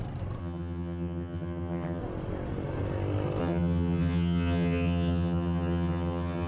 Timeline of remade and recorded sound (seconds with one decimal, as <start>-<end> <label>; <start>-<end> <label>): 0.0-0.4 recorded; 0.4-2.0 remade; 2.0-3.4 recorded; 3.4-6.5 remade

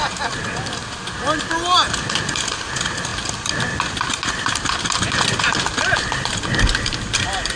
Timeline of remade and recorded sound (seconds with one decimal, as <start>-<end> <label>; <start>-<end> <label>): 0.0-7.6 recorded

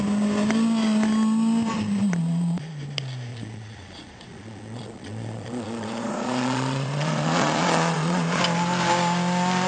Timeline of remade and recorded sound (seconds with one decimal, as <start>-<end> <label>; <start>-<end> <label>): 0.0-2.2 recorded; 2.2-2.7 remade; 2.7-3.3 recorded; 3.3-8.4 remade; 8.4-9.7 recorded

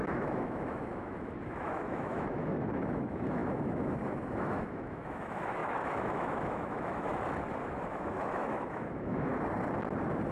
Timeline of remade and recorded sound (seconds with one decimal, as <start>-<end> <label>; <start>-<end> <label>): 0.0-7.1 remade; 7.1-7.8 recorded; 7.8-9.3 remade; 9.3-10.3 recorded

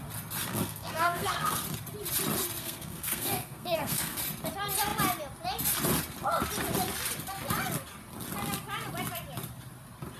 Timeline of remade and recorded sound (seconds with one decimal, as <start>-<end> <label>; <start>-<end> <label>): 0.0-0.5 recorded; 0.5-1.6 remade; 1.6-2.6 recorded; 2.6-4.2 remade; 4.2-10.2 recorded

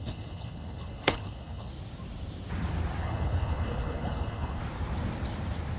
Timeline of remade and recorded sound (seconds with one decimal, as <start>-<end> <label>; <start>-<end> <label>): 0.0-1.7 remade; 1.7-3.0 recorded; 3.0-4.6 remade; 4.6-5.8 recorded

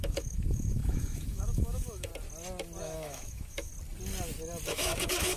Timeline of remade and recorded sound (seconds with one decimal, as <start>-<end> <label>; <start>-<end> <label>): 0.0-2.1 remade; 2.1-2.8 recorded; 2.8-3.7 remade; 3.7-4.7 recorded; 4.7-5.4 remade